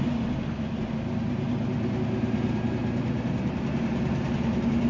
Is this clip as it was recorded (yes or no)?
yes